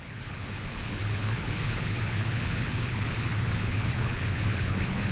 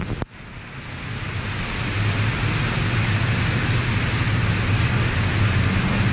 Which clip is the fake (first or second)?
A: first